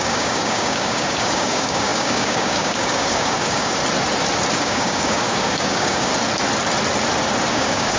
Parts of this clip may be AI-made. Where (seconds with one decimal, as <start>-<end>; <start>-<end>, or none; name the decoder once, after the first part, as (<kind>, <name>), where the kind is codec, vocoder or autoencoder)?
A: 0.0-3.8 (codec, DAC); 4.6-6.1; 7.5-8.0